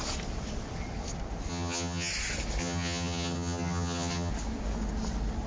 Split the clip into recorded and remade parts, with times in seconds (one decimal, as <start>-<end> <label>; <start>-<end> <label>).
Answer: 0.0-1.5 recorded; 1.5-2.1 remade; 2.1-2.6 recorded; 2.6-4.3 remade; 4.3-5.5 recorded